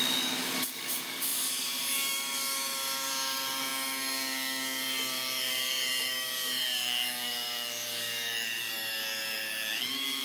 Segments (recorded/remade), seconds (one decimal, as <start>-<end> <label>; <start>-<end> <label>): 0.0-10.2 remade